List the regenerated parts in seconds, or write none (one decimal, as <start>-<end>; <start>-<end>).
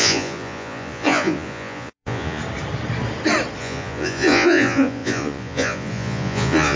0.0-2.4; 3.6-6.8